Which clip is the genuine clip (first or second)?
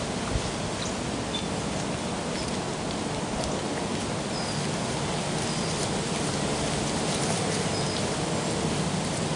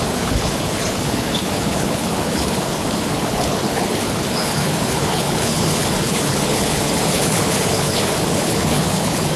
first